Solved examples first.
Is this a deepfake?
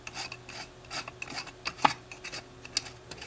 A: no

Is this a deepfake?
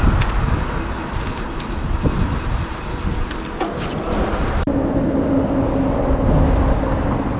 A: no